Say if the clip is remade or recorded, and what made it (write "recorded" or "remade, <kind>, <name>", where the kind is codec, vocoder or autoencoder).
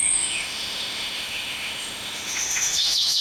remade, autoencoder, DAC-VAE